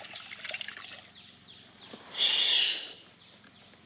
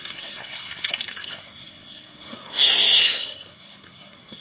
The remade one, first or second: second